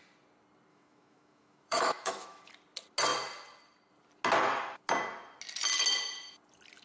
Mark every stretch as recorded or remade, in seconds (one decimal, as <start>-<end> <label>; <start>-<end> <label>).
0.0-0.7 recorded; 0.7-2.5 remade; 2.5-6.8 recorded